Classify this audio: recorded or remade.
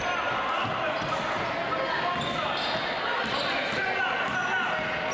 recorded